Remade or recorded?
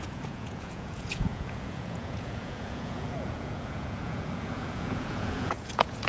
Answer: remade